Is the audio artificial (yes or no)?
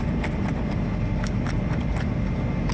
no